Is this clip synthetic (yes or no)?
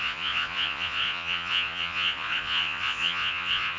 yes